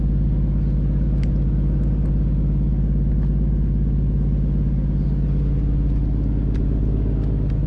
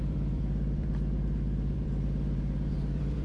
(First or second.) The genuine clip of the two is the first